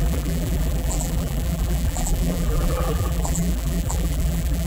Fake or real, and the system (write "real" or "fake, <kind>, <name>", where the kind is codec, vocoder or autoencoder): fake, vocoder, BigVGAN v2